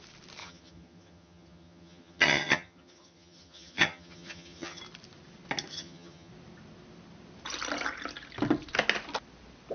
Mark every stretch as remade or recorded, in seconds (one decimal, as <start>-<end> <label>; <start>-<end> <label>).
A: 0.0-0.4 recorded; 0.4-4.8 remade; 4.8-5.7 recorded; 5.7-6.3 remade; 6.3-9.7 recorded

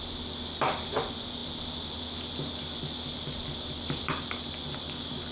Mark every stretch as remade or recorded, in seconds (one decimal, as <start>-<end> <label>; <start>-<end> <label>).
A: 0.0-5.3 recorded

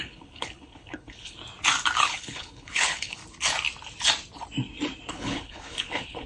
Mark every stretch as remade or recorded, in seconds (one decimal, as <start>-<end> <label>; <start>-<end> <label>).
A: 0.0-1.4 remade; 1.4-2.0 recorded; 2.0-3.2 remade; 3.2-5.1 recorded; 5.1-6.3 remade

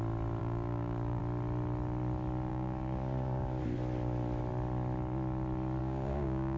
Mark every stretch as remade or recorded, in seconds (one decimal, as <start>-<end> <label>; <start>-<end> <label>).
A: 0.0-0.4 recorded; 0.4-1.2 remade; 1.2-2.5 recorded; 2.5-3.6 remade; 3.6-5.8 recorded; 5.8-6.6 remade

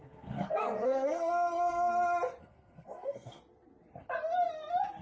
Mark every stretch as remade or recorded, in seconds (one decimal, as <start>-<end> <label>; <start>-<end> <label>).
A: 0.0-1.9 remade; 1.9-2.4 recorded; 2.4-3.4 remade; 3.4-5.0 recorded

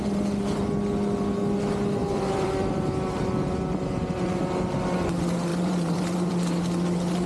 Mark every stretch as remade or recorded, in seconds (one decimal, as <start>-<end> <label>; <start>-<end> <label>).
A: 0.0-2.0 recorded; 2.0-3.2 remade; 3.2-5.5 recorded; 5.5-6.3 remade; 6.3-7.3 recorded

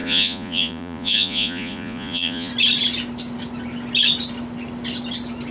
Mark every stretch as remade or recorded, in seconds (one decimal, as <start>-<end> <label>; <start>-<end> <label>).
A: 0.0-2.5 remade; 2.5-5.5 recorded